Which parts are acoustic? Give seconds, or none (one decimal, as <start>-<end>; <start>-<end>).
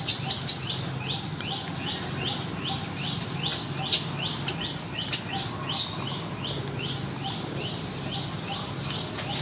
0.0-9.4